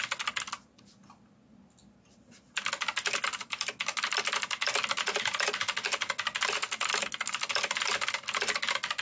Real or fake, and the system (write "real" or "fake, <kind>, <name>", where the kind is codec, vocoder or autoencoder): real